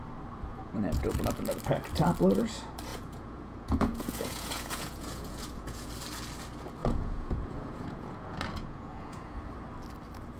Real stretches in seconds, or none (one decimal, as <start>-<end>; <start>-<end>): 0.0-0.5; 1.1-2.9; 5.9-6.8; 9.4-10.4